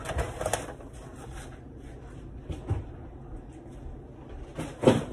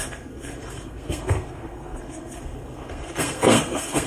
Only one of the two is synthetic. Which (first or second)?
second